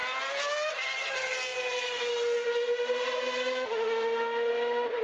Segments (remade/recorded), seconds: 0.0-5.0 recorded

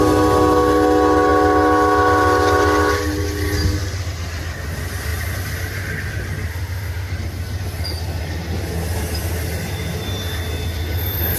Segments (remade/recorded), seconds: 0.0-6.5 recorded; 6.5-7.1 remade; 7.1-11.4 recorded

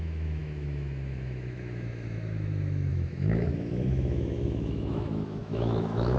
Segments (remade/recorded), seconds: 0.0-6.2 remade

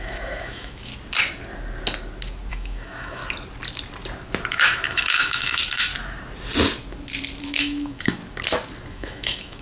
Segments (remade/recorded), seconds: 0.0-0.9 remade; 0.9-2.5 recorded; 2.5-3.2 remade; 3.2-4.5 recorded; 4.5-5.9 remade; 5.9-7.4 recorded; 7.4-8.2 remade; 8.2-8.9 recorded; 8.9-9.6 remade

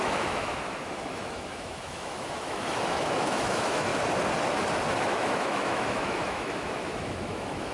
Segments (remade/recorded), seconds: 0.0-3.9 remade; 3.9-5.0 recorded; 5.0-7.7 remade

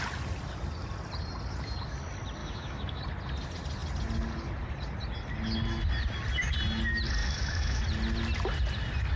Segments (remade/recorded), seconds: 0.0-2.4 recorded; 2.4-3.0 remade; 3.0-7.2 recorded; 7.2-7.8 remade; 7.8-9.2 recorded